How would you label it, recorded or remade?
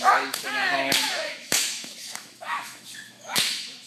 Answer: remade